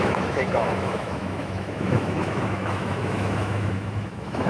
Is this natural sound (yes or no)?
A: no